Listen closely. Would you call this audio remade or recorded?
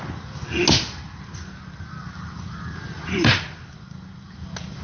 recorded